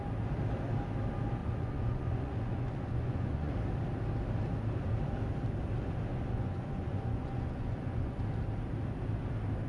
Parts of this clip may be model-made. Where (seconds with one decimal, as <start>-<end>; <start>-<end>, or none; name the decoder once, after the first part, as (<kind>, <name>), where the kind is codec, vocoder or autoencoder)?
1.4-3.5 (vocoder, Vocos); 6.1-8.2